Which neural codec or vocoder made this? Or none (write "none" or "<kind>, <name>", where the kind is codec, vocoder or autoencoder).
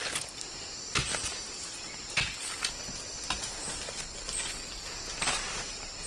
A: none